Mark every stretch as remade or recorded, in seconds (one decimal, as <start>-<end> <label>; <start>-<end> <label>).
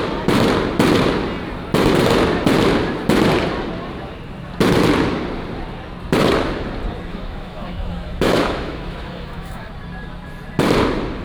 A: 0.0-7.1 recorded; 7.1-9.7 remade; 9.7-11.2 recorded